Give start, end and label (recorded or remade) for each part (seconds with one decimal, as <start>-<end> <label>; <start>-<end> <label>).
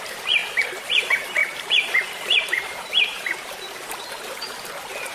0.0-5.1 remade